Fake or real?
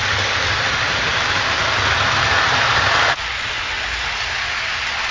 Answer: real